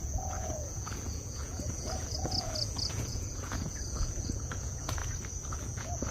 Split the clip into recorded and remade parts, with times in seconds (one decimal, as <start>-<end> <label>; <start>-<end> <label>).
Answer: 0.0-5.0 remade; 5.0-5.5 recorded; 5.5-6.1 remade